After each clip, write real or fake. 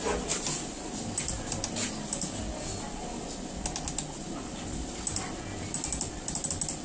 real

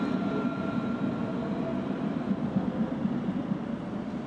real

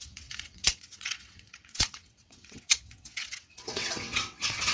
fake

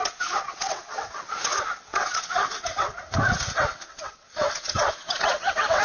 fake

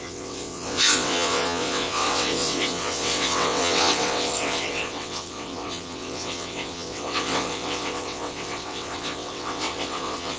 fake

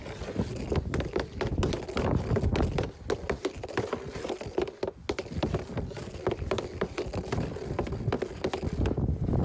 real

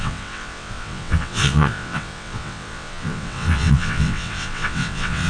fake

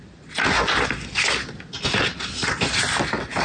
real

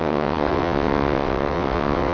fake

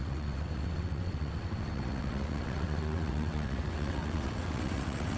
fake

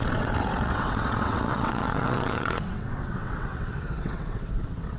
fake